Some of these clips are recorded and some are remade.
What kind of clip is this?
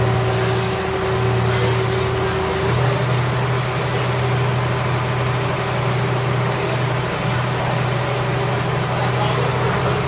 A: recorded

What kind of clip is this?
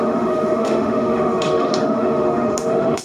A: remade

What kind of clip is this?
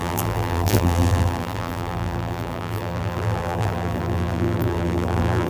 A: remade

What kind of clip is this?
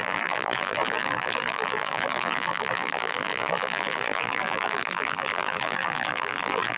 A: remade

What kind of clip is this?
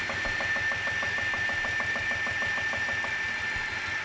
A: recorded